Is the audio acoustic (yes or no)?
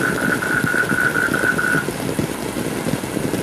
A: yes